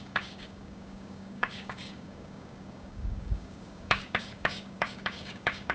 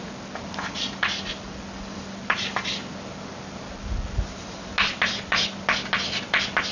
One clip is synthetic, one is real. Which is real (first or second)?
second